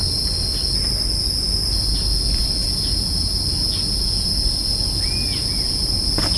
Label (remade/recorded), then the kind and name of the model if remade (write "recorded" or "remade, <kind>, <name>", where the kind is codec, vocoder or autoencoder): recorded